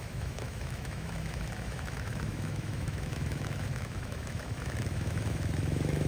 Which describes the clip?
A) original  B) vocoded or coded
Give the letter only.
B